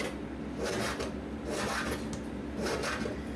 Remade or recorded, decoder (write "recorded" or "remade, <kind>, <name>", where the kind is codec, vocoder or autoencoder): recorded